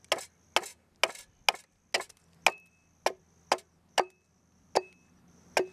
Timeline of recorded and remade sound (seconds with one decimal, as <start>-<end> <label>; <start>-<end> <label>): 0.0-5.7 recorded